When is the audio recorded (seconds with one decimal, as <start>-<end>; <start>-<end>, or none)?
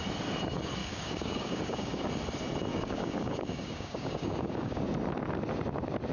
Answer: 0.0-0.8; 2.1-2.7; 4.8-6.1